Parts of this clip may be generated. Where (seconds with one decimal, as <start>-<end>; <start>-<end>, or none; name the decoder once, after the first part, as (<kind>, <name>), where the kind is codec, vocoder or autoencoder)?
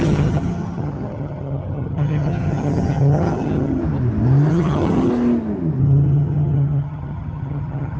0.0-3.8 (vocoder, HiFi-GAN); 4.5-5.1; 5.8-8.0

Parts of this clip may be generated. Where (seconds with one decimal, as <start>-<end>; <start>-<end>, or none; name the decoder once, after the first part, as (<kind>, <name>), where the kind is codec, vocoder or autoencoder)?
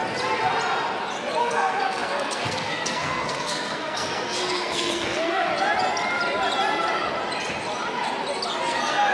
1.4-5.5 (codec, SNAC); 8.6-9.1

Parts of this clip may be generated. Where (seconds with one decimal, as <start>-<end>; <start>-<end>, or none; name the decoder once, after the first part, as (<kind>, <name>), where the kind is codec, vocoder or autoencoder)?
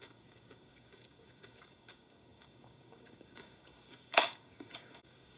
0.0-5.4 (codec, DAC)